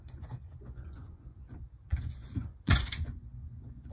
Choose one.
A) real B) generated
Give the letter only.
B